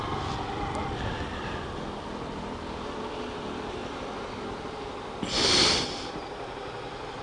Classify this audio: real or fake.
real